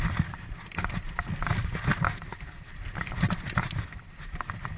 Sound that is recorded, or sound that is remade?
recorded